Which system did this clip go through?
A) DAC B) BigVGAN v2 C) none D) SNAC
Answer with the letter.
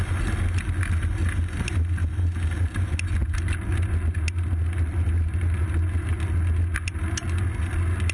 C